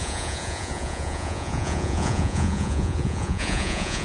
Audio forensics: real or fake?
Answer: fake